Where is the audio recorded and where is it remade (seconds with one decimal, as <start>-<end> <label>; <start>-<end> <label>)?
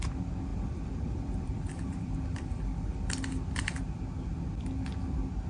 0.0-0.5 recorded; 0.5-3.8 remade; 3.8-5.5 recorded